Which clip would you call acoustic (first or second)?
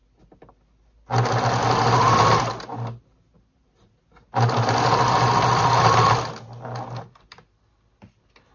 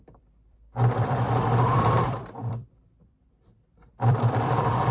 first